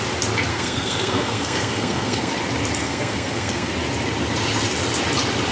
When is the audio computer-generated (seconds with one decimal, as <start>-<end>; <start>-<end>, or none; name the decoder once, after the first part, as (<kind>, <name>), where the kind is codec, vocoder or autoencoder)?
0.5-2.3 (codec, SNAC); 2.8-3.7